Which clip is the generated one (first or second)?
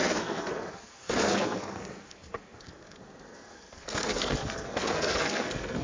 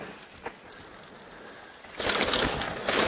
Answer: first